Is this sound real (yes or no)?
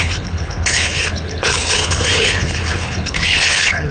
no